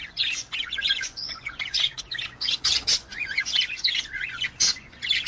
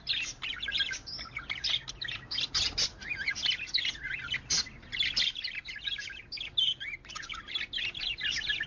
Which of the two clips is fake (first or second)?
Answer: first